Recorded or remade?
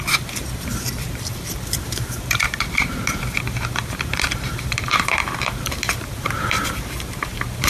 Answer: remade